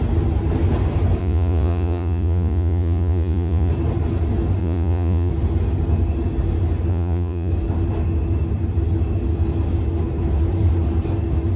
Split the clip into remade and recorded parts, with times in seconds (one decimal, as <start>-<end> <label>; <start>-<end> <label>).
0.0-1.2 recorded; 1.2-3.7 remade; 3.7-4.6 recorded; 4.6-5.3 remade; 5.3-6.9 recorded; 6.9-7.5 remade; 7.5-11.6 recorded